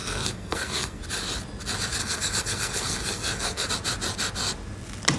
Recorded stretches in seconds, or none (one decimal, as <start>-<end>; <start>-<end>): 1.0-2.0; 3.7-5.2